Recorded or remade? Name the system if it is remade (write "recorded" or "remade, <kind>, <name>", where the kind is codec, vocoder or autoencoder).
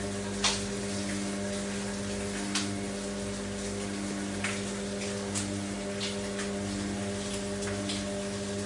recorded